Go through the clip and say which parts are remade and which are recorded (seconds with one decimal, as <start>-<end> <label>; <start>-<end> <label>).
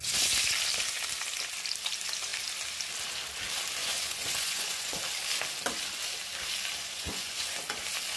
0.0-3.8 recorded; 3.8-5.0 remade; 5.0-6.8 recorded; 6.8-7.6 remade; 7.6-8.2 recorded